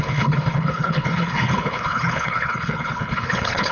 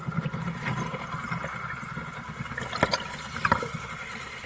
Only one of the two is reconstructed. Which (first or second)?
first